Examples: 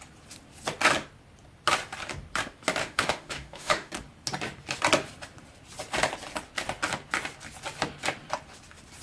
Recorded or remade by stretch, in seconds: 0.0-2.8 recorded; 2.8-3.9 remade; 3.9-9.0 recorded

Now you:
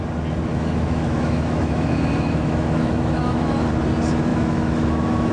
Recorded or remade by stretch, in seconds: 0.0-0.5 recorded; 0.5-3.7 remade; 3.7-4.3 recorded; 4.3-5.3 remade

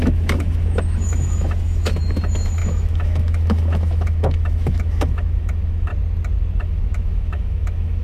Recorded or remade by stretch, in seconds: 0.0-5.9 remade; 5.9-6.6 recorded; 6.6-8.0 remade

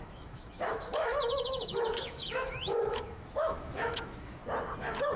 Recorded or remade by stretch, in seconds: 0.0-4.4 remade; 4.4-5.2 recorded

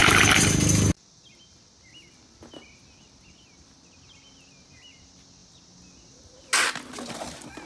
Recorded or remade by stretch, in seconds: 0.0-7.7 recorded

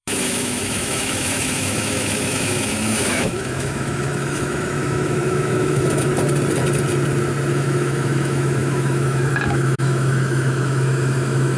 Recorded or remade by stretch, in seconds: 0.0-6.1 remade; 6.1-7.5 recorded; 7.5-11.6 remade

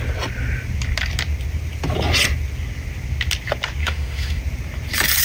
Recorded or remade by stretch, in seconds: 0.0-3.8 recorded; 3.8-4.4 remade; 4.4-5.2 recorded